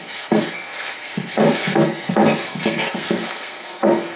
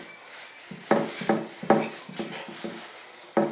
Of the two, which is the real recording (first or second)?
second